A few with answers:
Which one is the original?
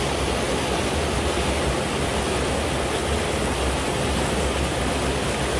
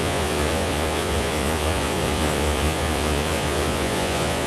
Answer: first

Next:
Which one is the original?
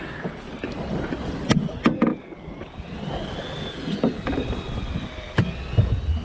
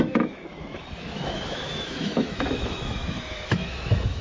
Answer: first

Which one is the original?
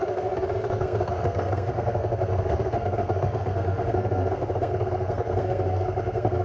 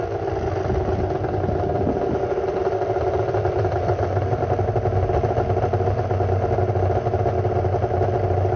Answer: second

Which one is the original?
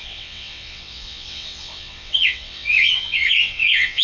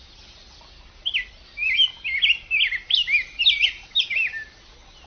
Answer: second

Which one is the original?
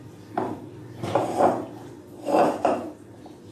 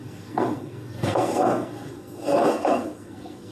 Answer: first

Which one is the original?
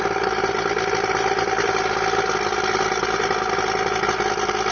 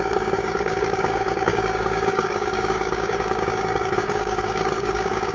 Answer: first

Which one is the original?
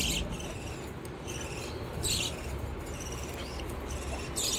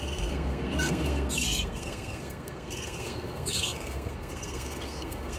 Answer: first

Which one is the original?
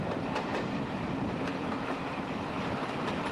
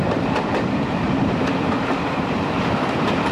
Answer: first